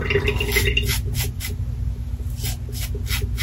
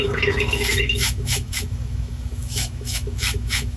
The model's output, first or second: second